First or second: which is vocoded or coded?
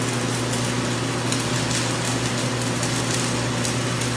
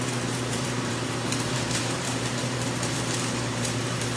second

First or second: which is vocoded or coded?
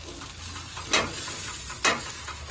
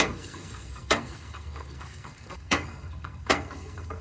second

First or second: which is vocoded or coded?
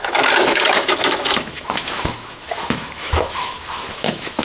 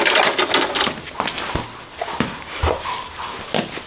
first